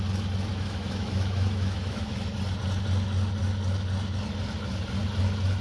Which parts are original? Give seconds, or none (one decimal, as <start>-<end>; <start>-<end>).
0.0-0.5; 2.2-5.6